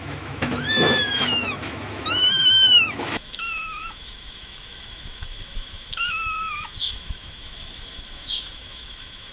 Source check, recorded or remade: remade